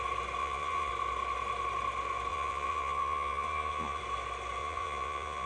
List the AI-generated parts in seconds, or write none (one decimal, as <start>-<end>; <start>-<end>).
0.4-0.9; 2.3-4.0; 4.6-5.5